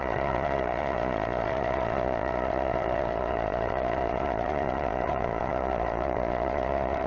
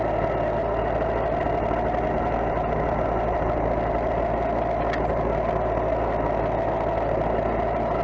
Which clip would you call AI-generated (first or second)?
first